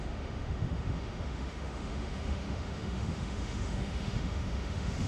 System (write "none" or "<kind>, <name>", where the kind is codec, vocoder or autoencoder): autoencoder, DAC-VAE